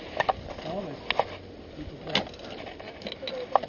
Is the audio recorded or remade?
recorded